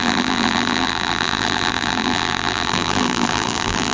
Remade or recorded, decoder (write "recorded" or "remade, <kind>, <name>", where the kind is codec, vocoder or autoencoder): remade, vocoder, BigVGAN v2